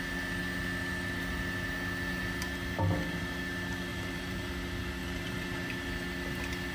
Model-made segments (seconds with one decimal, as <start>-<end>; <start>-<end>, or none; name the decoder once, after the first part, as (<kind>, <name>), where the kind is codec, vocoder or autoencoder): 3.9-4.5 (vocoder, BigVGAN v2); 5.0-5.7

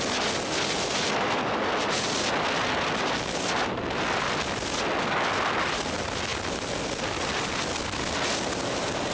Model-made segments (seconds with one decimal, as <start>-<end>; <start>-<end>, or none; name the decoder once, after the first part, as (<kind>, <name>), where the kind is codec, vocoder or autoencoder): none

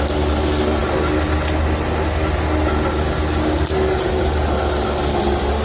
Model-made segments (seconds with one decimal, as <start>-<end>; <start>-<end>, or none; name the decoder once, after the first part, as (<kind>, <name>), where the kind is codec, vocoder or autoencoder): none

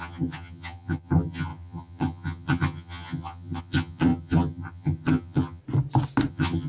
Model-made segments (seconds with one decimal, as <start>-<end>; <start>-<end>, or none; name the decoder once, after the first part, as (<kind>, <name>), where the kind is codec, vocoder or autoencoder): 0.0-5.6 (vocoder, HiFi-GAN); 6.3-6.7